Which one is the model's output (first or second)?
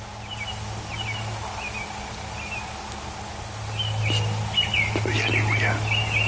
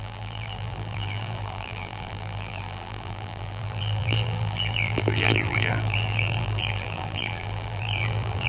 second